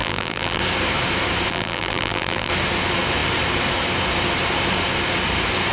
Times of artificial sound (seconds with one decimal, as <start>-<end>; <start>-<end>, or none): 0.0-0.6; 1.5-2.5